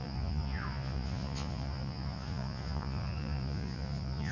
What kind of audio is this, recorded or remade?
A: remade